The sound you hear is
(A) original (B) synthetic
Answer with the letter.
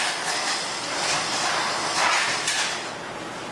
A